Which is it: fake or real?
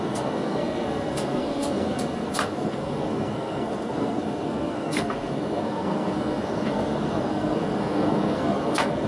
fake